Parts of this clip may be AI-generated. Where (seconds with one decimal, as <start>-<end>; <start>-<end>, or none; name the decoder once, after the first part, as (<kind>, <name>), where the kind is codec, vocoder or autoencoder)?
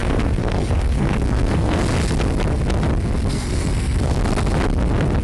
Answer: 0.0-1.8 (codec, SNAC); 3.3-4.2